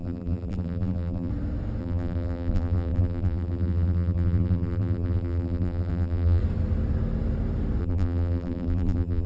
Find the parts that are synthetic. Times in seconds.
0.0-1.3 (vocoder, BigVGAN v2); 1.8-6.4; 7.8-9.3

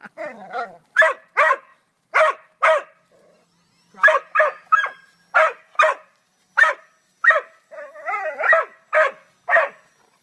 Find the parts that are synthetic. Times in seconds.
none

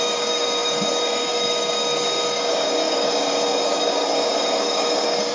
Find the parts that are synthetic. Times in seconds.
0.0-5.3 (codec, DAC)

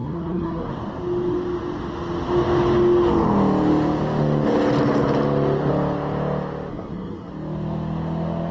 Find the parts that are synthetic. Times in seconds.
0.0-0.7 (codec, SNAC); 6.7-7.3